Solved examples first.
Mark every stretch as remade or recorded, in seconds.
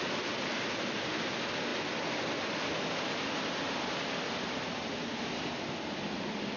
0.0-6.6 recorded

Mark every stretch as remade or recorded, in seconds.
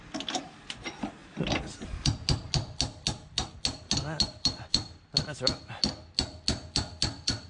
0.0-7.5 recorded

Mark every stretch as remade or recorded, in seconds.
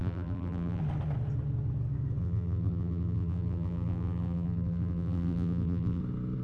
0.0-0.8 remade; 0.8-2.2 recorded; 2.2-6.0 remade; 6.0-6.4 recorded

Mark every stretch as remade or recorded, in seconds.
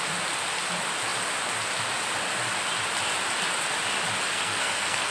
0.0-4.3 recorded; 4.3-5.1 remade